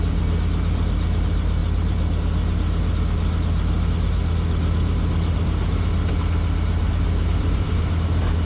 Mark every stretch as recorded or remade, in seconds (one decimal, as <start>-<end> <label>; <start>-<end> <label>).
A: 0.0-7.3 recorded; 7.3-7.9 remade; 7.9-8.5 recorded